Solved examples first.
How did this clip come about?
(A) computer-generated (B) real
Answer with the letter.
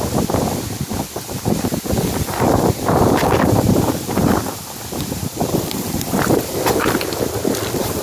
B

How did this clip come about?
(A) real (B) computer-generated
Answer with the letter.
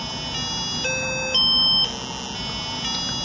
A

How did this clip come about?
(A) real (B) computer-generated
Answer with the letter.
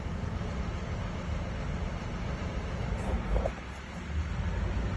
A